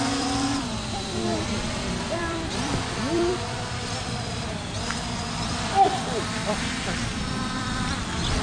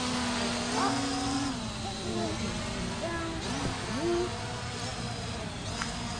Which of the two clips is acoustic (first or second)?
second